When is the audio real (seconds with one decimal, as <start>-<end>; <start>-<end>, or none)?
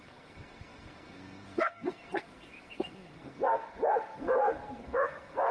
none